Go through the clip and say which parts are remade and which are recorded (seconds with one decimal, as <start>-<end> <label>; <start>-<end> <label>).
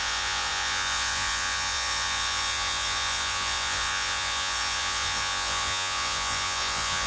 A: 0.0-7.1 remade